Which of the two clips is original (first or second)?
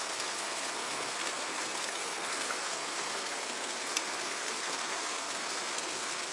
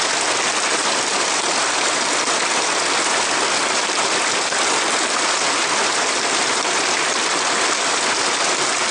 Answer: second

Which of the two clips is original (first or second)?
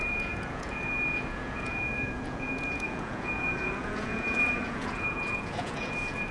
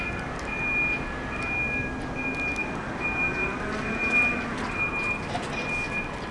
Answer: second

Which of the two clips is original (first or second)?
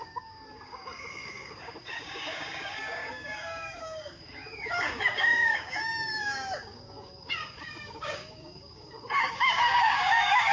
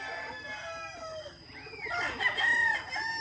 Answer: second